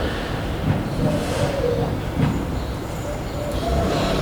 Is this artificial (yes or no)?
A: yes